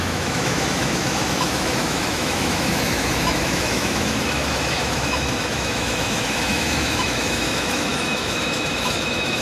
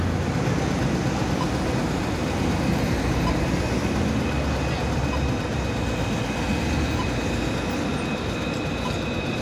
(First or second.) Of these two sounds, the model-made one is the first